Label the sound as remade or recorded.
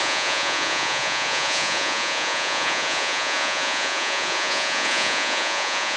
remade